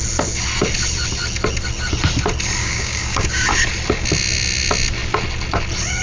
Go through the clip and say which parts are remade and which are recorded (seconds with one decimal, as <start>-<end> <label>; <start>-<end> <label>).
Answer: 0.0-2.6 recorded; 2.6-3.5 remade; 3.5-6.0 recorded